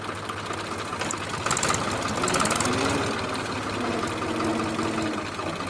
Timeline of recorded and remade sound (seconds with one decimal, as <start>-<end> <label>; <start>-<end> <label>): 0.0-5.7 recorded